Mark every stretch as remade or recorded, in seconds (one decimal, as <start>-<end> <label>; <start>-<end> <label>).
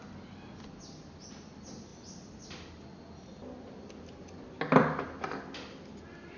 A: 0.0-6.4 recorded